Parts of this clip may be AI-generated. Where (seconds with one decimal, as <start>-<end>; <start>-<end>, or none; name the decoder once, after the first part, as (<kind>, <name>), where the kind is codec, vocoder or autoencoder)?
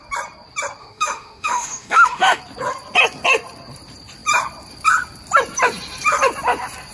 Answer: 0.8-2.4 (autoencoder, DAC-VAE)